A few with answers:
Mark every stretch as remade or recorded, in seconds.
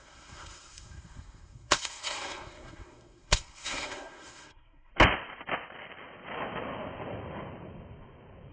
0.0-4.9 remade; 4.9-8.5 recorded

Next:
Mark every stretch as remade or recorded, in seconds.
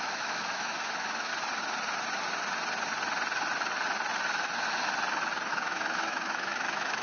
0.0-1.3 remade; 1.3-5.5 recorded; 5.5-7.0 remade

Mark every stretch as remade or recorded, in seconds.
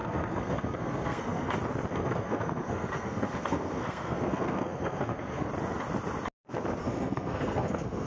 0.0-1.5 remade; 1.5-1.9 recorded; 1.9-5.5 remade; 5.5-6.8 recorded; 6.8-8.1 remade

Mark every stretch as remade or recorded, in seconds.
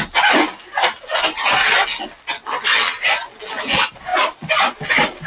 0.0-5.3 recorded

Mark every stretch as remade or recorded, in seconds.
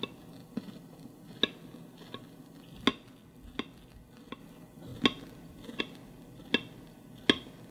0.0-7.7 recorded